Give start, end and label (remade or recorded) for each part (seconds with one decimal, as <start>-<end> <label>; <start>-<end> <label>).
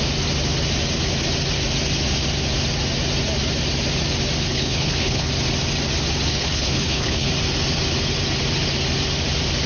0.0-4.5 recorded; 4.5-5.3 remade; 5.3-6.3 recorded; 6.3-7.3 remade; 7.3-9.7 recorded